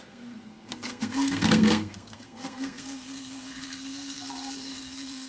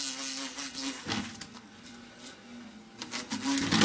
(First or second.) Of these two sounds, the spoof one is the first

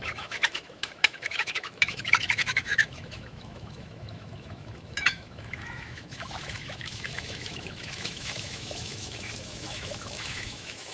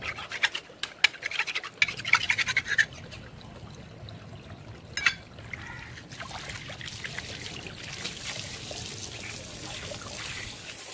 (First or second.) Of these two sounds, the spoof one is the first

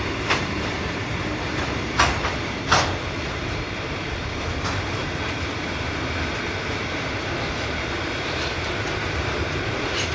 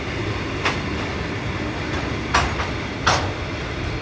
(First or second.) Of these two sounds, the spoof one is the first